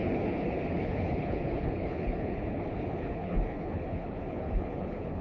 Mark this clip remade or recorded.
remade